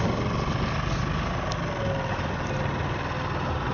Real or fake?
real